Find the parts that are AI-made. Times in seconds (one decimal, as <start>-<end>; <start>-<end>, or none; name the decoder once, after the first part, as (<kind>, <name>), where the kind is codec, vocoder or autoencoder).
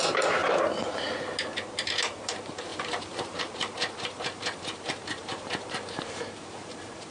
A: 0.0-0.4 (vocoder, BigVGAN v2); 2.2-7.1